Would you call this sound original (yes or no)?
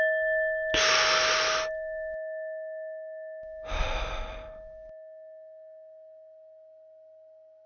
yes